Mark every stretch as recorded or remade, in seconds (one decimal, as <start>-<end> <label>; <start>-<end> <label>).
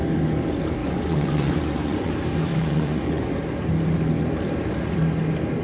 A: 0.0-0.8 recorded; 0.8-2.1 remade; 2.1-2.5 recorded; 2.5-3.3 remade; 3.3-5.6 recorded